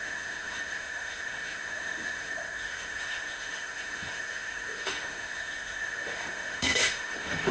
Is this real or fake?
fake